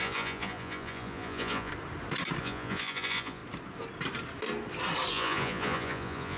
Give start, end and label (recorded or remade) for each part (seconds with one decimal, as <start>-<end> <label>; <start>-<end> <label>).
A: 0.0-1.7 remade; 1.7-2.4 recorded; 2.4-3.4 remade; 3.4-5.1 recorded; 5.1-6.4 remade